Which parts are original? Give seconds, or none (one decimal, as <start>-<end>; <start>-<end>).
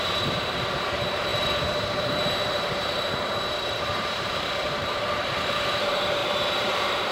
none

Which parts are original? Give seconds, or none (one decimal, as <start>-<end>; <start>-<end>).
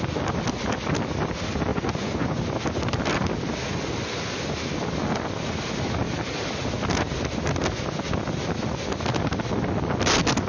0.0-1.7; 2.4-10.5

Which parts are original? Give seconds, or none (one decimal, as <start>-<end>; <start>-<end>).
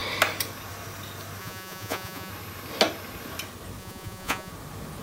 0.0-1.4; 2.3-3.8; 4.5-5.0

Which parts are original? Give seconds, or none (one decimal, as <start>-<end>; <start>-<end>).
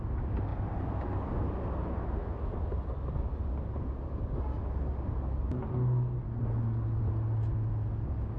0.0-8.4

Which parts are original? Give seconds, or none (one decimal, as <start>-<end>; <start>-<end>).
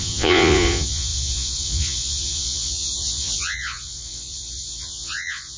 none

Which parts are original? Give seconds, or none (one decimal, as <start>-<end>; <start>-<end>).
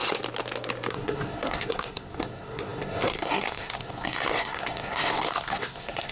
0.0-0.9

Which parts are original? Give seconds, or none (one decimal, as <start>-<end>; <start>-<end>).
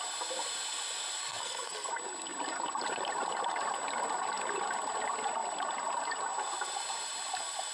0.0-1.2; 1.9-7.7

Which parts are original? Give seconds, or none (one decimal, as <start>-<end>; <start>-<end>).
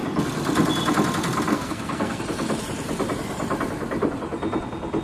0.0-1.5; 2.2-5.0